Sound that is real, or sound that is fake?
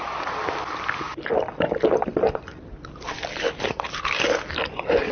real